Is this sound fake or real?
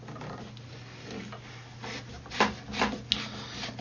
real